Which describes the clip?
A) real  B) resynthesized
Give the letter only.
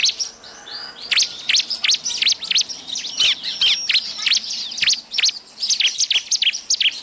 A